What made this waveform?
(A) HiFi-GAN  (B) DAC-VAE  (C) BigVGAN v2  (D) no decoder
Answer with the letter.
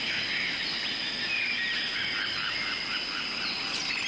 C